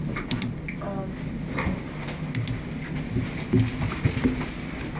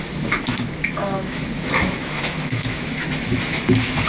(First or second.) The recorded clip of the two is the first